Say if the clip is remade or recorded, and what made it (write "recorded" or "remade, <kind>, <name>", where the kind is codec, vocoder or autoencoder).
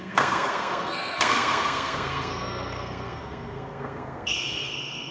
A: remade, codec, SNAC